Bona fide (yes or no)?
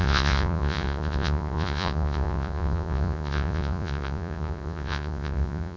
no